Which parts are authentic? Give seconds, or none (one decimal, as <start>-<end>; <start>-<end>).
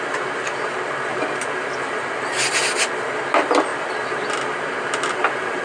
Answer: 0.0-5.6